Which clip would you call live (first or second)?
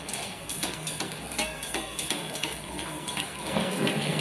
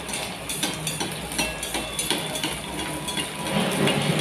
second